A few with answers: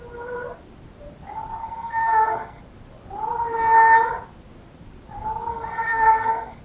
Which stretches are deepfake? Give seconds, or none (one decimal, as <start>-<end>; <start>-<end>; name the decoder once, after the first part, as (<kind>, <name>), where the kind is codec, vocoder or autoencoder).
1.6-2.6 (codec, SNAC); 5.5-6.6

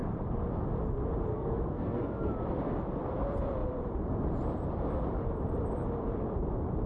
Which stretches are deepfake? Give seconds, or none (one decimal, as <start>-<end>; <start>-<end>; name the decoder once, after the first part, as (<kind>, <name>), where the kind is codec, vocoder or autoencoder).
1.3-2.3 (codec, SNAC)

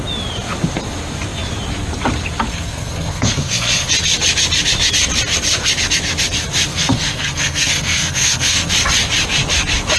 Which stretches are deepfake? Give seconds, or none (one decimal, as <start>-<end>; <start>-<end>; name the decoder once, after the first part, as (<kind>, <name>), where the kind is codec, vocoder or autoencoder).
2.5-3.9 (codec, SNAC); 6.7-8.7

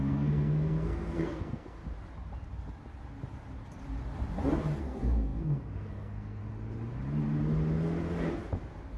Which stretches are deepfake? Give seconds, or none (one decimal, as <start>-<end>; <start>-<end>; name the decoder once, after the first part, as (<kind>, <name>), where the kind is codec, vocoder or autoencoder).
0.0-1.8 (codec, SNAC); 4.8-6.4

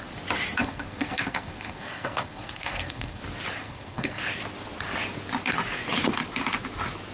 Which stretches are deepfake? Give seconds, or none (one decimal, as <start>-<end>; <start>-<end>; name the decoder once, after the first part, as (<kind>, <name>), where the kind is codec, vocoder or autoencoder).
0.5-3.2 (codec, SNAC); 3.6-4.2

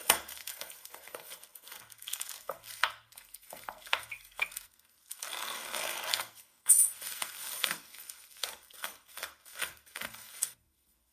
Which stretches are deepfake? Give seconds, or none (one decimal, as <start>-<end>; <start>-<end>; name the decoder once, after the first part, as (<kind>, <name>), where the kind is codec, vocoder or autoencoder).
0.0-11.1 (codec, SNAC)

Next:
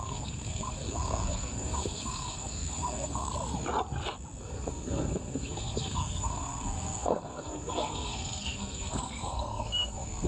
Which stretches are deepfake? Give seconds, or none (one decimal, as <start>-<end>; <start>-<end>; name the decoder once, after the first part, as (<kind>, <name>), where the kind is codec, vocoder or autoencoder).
0.0-3.3 (codec, SNAC); 4.4-10.3